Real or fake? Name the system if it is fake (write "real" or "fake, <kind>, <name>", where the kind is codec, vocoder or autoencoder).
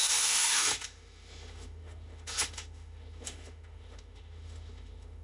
fake, autoencoder, DAC-VAE